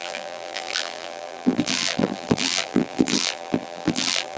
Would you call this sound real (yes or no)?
no